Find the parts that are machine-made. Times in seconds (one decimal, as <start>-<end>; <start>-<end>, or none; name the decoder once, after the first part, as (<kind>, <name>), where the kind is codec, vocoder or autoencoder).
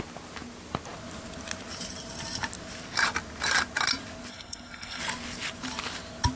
4.3-5.0 (codec, SNAC)